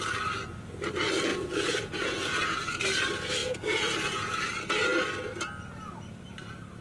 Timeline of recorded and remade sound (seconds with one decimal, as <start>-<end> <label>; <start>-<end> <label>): 0.0-1.3 recorded; 1.3-2.8 remade; 2.8-3.4 recorded; 3.4-4.5 remade; 4.5-6.8 recorded